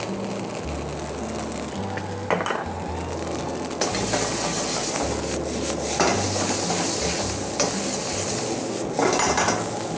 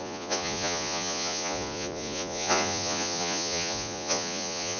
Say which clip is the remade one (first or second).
second